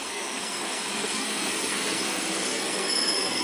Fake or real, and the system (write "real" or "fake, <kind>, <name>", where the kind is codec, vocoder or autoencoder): fake, codec, SNAC